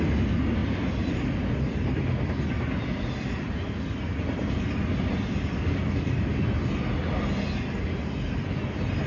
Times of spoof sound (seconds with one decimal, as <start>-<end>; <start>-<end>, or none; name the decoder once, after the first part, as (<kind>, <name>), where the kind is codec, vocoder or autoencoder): none